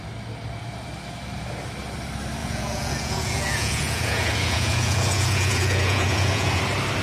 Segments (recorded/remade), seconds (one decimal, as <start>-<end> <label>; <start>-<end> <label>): 0.0-2.4 recorded; 2.4-6.6 remade; 6.6-7.0 recorded

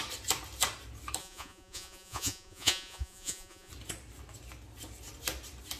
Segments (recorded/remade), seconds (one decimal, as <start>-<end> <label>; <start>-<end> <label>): 0.0-1.2 recorded; 1.2-3.7 remade; 3.7-5.8 recorded